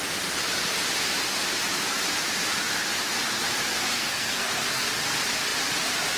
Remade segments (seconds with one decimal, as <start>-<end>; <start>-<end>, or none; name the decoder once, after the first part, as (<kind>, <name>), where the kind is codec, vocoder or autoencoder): 3.9-4.9 (codec, SNAC)